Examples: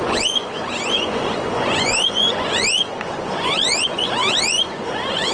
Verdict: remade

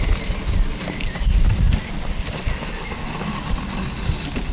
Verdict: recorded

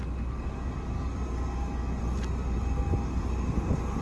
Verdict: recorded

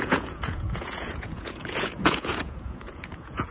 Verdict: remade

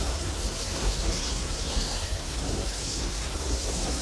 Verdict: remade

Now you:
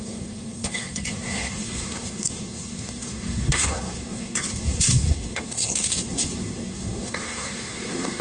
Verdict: remade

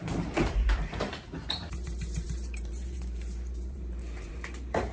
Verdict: remade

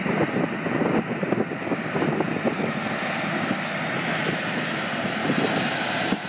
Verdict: recorded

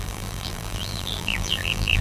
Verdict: remade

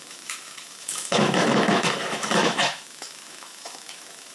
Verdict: remade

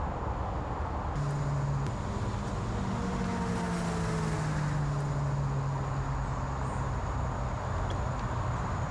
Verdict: recorded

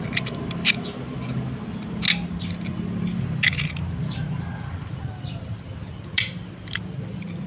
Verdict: recorded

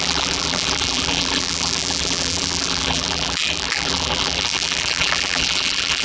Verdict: remade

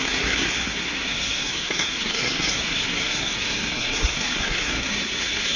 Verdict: remade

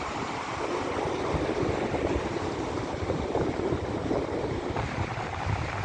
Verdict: remade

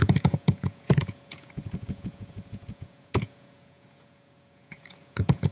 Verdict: remade